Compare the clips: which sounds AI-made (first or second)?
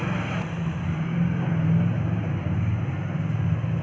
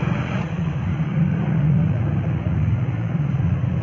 second